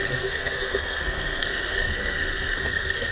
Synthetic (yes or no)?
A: yes